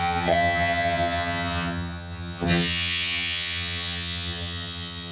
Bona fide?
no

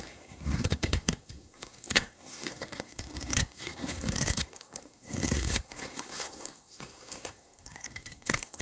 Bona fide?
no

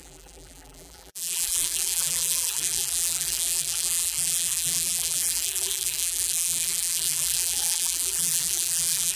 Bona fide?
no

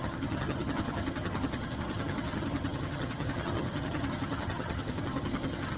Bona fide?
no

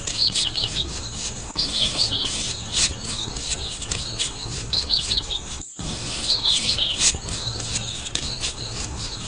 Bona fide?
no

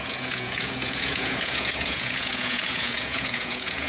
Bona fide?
no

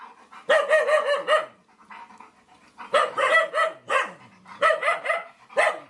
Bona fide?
yes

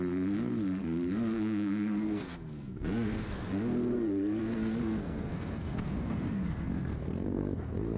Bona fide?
no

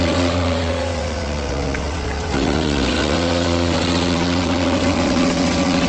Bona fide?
no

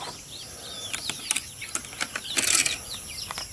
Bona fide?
yes